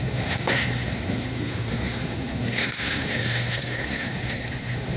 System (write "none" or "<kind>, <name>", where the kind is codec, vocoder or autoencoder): codec, SNAC